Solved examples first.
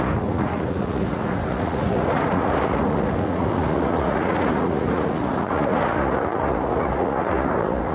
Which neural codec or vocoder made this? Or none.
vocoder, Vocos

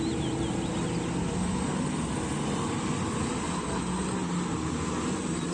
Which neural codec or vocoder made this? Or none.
none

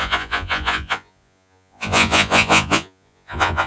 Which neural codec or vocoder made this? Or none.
vocoder, Vocos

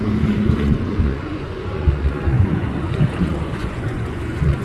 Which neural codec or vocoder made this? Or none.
vocoder, Vocos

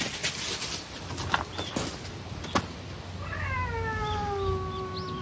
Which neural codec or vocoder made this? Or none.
none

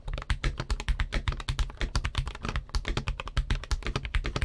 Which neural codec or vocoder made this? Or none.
none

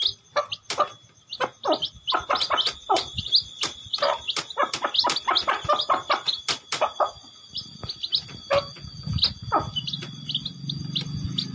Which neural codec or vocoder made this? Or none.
none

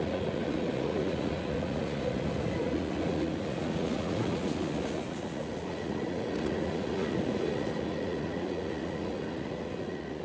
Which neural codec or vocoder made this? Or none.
vocoder, Vocos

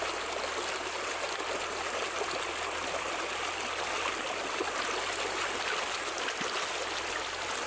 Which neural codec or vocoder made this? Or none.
none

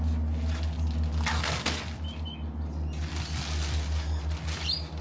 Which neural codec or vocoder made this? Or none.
none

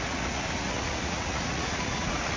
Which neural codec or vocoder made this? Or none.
vocoder, Vocos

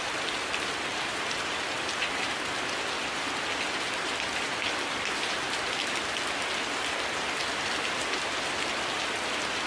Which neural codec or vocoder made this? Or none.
none